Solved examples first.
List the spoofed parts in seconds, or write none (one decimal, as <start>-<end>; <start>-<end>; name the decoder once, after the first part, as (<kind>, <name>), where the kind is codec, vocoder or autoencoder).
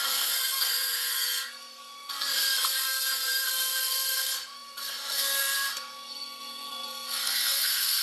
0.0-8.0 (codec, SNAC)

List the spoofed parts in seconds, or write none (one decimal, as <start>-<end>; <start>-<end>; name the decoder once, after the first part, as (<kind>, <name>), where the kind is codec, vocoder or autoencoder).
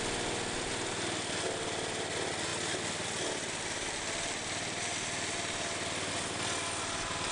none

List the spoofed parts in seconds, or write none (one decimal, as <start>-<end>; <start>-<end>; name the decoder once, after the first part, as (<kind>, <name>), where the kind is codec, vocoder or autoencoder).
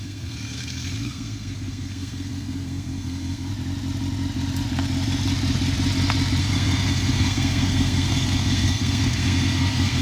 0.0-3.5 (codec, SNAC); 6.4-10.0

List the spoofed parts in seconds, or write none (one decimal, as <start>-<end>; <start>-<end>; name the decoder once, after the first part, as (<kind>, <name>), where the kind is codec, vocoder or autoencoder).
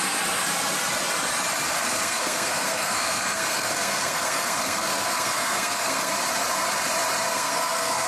1.7-6.1 (codec, SNAC); 7.3-8.1